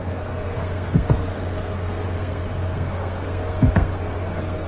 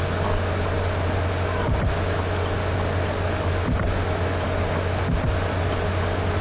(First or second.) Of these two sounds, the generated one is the first